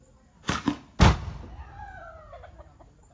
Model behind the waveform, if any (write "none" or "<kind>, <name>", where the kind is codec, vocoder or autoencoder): none